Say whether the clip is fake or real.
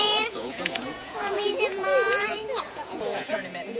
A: fake